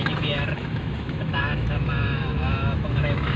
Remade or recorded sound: remade